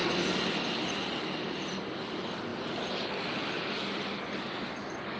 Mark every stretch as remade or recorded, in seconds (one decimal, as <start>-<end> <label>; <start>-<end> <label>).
0.0-5.2 recorded